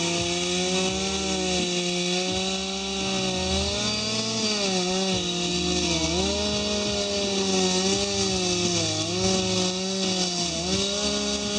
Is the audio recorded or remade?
recorded